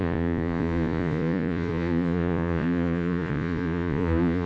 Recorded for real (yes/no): no